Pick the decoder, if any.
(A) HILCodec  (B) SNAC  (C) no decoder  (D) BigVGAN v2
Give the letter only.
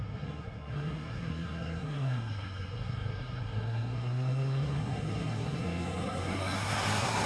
B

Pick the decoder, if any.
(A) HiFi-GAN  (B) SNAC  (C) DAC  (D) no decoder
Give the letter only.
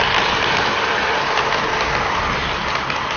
D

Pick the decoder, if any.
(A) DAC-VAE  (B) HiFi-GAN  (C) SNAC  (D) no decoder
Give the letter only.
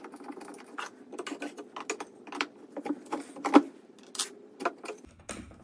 D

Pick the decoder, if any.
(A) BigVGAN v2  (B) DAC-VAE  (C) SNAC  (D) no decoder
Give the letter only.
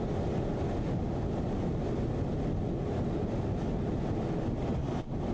D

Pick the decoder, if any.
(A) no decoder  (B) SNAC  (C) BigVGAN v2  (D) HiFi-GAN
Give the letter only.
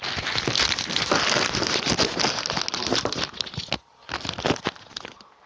A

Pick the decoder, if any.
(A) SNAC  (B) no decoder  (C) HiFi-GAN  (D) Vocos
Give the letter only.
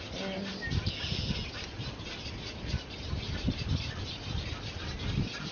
B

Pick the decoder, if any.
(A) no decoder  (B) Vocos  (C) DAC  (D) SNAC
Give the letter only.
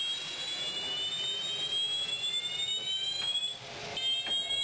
A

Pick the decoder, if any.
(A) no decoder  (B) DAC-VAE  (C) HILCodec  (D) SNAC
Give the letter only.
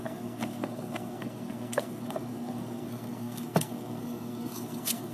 D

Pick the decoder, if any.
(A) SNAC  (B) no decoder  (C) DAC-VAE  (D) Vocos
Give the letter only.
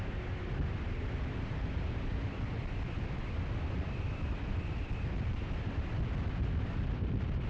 B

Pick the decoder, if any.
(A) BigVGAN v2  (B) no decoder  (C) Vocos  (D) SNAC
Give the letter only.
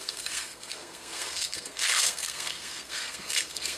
D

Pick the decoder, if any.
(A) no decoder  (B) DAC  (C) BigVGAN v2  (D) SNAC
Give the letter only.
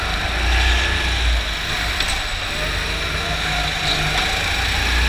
A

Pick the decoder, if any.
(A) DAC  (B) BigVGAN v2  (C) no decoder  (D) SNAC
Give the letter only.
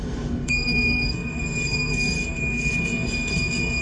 D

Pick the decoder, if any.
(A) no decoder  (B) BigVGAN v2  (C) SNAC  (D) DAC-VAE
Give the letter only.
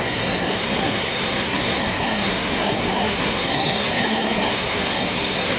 C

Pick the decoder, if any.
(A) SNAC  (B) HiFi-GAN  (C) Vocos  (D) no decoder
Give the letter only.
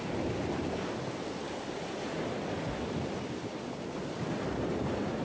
D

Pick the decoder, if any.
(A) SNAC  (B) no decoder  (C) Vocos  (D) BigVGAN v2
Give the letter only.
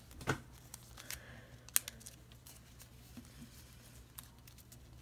B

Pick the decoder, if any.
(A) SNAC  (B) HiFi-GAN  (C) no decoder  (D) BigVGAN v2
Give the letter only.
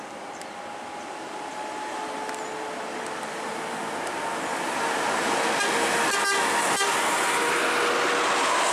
C